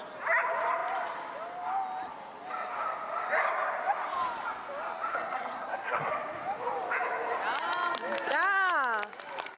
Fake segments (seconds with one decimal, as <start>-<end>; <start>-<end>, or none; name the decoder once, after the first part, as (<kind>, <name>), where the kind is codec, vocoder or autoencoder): 5.1-6.1 (codec, SNAC)